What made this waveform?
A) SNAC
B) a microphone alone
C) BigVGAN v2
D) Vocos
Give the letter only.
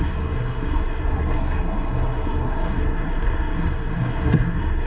A